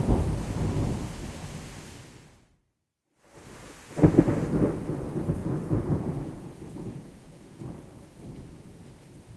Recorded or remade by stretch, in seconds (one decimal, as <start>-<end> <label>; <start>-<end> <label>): 0.0-5.4 recorded; 5.4-7.8 remade; 7.8-9.4 recorded